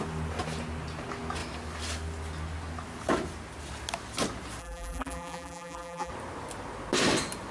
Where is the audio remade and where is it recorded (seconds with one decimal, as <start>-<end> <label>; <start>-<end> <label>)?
0.0-4.6 recorded; 4.6-6.1 remade; 6.1-7.5 recorded